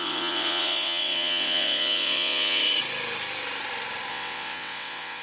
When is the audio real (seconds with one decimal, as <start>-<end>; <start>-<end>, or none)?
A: 2.6-4.1